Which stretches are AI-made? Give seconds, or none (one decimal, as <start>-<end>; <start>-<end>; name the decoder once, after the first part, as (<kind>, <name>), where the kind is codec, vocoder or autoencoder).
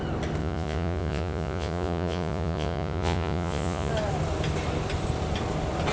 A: 0.4-3.9 (vocoder, Vocos)